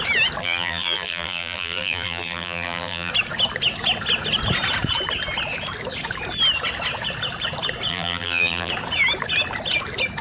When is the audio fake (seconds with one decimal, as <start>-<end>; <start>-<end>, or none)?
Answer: 0.4-3.1; 7.9-8.7